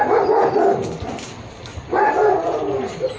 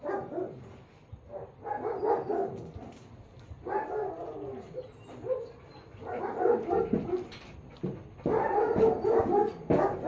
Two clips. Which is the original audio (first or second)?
second